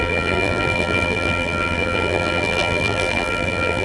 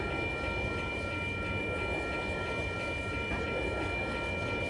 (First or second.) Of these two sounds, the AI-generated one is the first